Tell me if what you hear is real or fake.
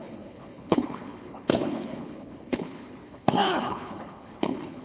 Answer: fake